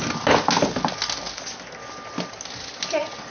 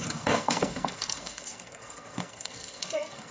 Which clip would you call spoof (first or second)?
second